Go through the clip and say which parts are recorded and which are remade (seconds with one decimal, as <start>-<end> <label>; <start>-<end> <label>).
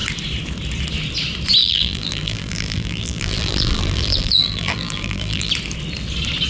0.0-1.6 recorded; 1.6-5.5 remade; 5.5-6.5 recorded